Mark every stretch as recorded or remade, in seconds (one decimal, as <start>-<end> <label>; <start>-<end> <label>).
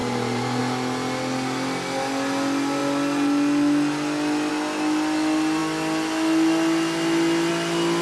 0.0-0.6 remade; 0.6-8.0 recorded